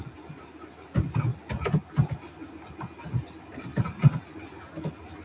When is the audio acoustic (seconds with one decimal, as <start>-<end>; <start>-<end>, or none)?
0.0-5.2